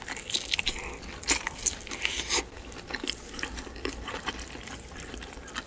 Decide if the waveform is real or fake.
real